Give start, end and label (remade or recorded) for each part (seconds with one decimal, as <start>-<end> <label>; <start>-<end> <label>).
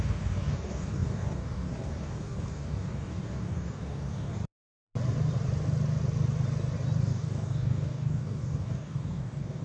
0.0-4.4 remade; 4.4-7.0 recorded; 7.0-9.6 remade